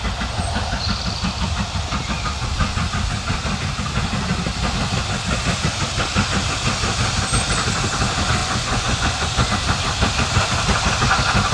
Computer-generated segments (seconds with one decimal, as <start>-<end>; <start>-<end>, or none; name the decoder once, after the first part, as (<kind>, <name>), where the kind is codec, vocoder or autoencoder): 8.4-9.5 (vocoder, Vocos)